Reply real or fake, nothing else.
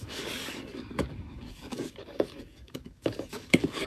fake